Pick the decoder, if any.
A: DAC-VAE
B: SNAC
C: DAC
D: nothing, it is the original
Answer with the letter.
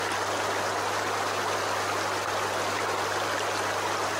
D